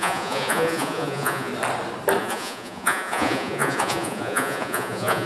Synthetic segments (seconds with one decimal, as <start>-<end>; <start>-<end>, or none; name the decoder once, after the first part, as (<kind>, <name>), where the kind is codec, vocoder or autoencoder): 0.0-1.5 (vocoder, Vocos); 2.2-5.3